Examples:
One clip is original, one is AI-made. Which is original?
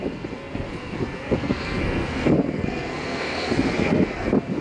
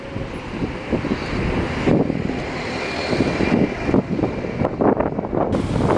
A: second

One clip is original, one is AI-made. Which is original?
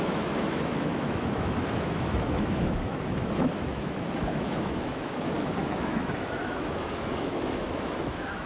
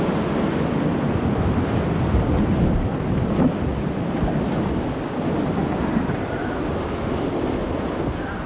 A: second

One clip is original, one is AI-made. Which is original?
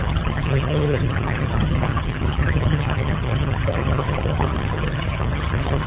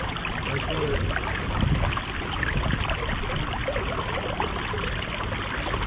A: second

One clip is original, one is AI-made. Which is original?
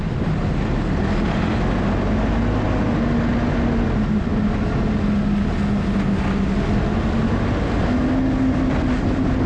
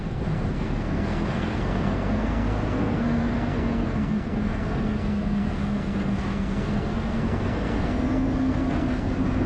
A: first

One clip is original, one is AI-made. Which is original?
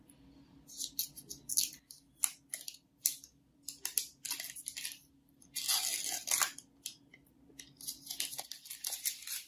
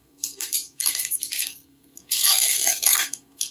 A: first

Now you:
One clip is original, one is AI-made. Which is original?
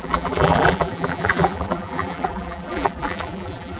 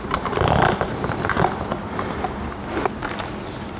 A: second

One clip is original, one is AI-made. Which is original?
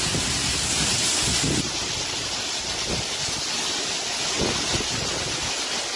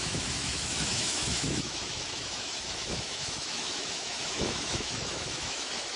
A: first